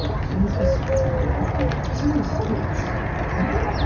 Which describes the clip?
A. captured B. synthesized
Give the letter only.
A